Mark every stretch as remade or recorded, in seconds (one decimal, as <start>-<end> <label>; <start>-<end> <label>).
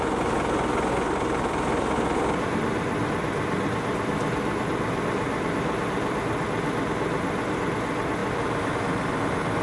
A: 0.0-9.6 recorded